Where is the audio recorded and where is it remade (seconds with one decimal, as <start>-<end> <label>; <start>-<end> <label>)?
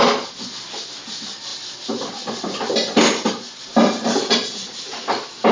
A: 0.0-5.5 recorded